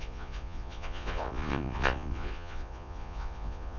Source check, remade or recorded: remade